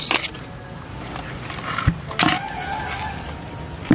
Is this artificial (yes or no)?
no